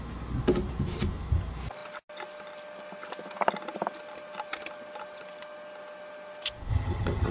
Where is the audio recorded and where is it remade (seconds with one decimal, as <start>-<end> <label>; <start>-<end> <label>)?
0.0-6.7 recorded; 6.7-7.3 remade